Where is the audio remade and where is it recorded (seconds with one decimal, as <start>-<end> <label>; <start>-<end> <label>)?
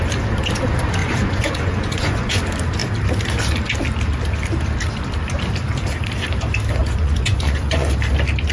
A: 0.0-1.0 recorded; 1.0-2.4 remade; 2.4-6.8 recorded; 6.8-7.9 remade; 7.9-8.5 recorded